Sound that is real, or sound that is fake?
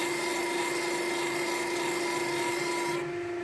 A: real